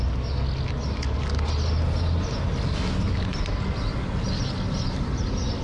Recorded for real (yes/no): yes